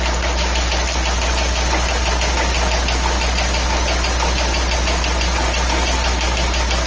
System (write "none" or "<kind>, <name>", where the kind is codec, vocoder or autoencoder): none